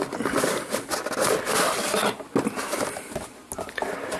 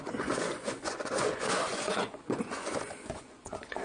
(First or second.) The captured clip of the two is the first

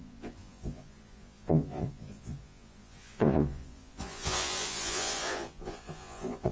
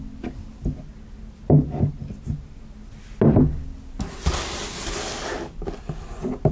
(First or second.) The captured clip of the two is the second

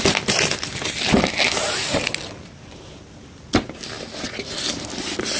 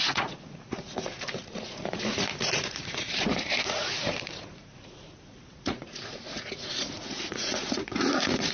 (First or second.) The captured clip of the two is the first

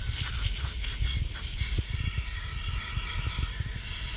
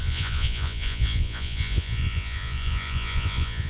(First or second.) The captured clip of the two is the first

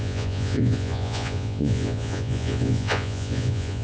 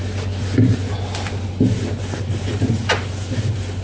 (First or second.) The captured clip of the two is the second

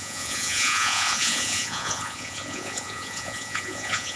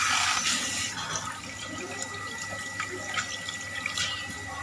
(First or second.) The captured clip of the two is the second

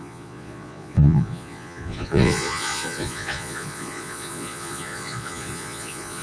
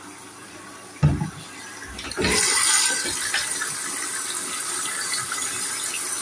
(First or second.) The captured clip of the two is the second